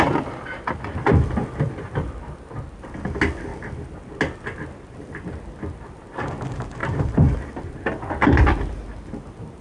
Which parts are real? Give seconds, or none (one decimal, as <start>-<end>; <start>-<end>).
0.0-9.6